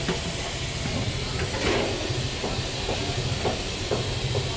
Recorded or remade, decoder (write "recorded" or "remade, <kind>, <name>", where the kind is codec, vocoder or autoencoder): recorded